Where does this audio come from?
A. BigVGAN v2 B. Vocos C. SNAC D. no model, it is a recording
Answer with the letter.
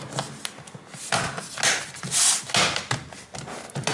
D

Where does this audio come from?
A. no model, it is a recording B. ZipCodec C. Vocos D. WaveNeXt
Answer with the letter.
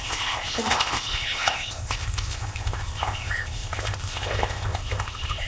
B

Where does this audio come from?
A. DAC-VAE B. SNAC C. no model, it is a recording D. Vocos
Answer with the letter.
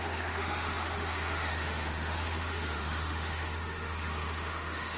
A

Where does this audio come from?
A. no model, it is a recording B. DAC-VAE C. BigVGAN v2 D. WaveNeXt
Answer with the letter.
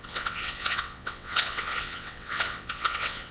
D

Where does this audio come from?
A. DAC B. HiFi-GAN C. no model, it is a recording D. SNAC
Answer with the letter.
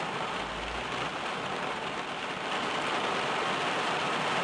C